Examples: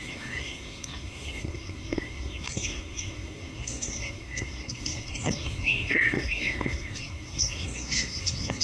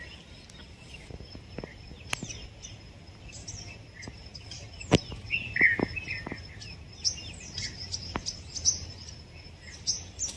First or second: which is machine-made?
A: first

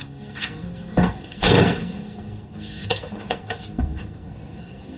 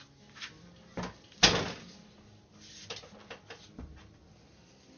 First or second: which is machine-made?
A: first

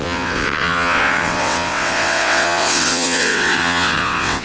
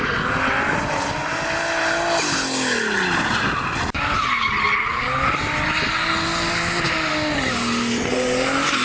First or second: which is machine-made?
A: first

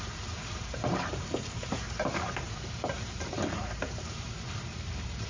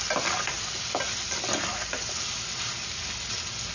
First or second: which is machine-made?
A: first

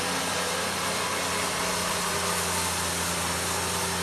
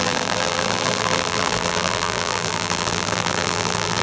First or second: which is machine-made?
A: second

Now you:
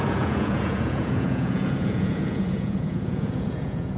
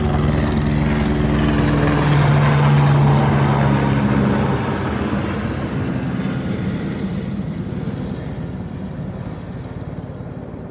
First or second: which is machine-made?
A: first